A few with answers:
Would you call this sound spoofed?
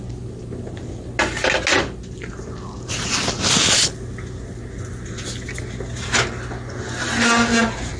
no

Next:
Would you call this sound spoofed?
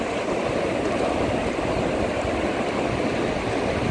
no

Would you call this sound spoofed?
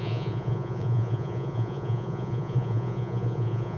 yes